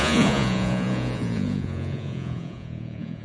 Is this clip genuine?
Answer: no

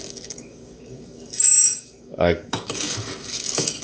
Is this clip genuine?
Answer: no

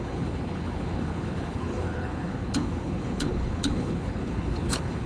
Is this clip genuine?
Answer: no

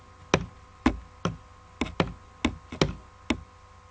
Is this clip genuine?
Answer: yes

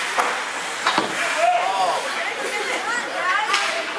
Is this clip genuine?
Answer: yes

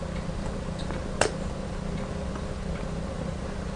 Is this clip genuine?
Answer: yes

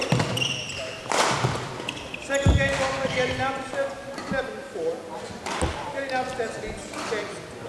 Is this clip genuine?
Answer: yes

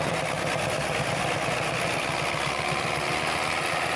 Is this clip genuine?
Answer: yes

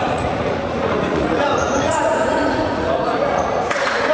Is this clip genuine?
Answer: no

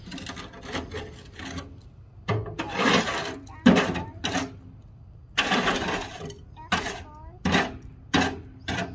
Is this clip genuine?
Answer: yes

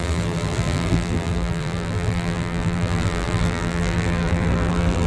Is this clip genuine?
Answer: no